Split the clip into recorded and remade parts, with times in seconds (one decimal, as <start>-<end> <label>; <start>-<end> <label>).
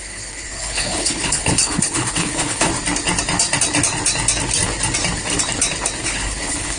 0.0-2.7 remade; 2.7-6.0 recorded; 6.0-6.8 remade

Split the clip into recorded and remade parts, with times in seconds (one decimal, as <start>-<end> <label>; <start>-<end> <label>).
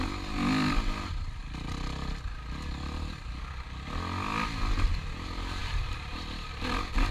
0.0-5.6 recorded; 5.6-6.5 remade; 6.5-7.1 recorded